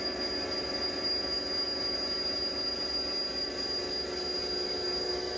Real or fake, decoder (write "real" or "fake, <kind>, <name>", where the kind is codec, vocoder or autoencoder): real